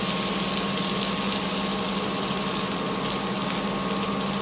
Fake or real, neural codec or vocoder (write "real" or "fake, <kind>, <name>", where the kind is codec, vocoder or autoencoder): real